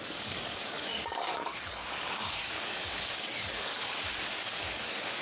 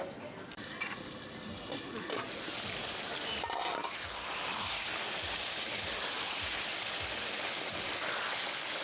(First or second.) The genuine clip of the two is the second